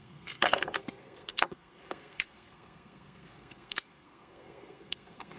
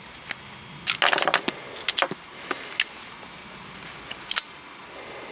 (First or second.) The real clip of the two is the second